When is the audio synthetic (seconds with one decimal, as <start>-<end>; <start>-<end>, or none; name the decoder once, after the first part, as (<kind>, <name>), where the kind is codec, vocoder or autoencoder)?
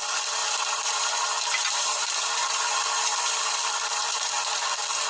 0.4-3.5 (vocoder, BigVGAN v2); 3.9-4.6